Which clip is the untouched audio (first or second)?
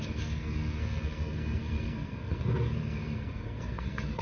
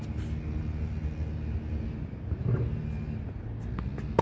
second